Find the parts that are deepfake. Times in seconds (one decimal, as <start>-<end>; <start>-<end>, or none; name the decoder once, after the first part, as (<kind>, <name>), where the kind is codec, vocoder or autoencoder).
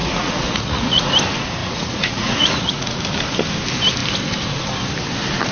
0.0-1.1 (vocoder, Vocos); 1.6-3.0